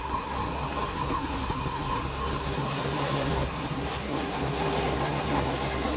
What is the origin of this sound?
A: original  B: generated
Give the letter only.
B